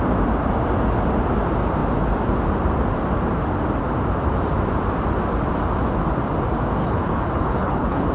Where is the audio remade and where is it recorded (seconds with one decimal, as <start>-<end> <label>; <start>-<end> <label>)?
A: 0.0-6.8 recorded; 6.8-8.1 remade

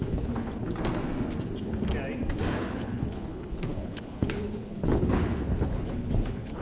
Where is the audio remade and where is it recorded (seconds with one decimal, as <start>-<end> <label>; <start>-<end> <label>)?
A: 0.0-0.6 remade; 0.6-2.5 recorded; 2.5-6.6 remade